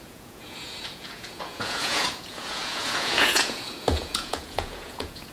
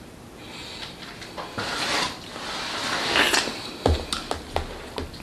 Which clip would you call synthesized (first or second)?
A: first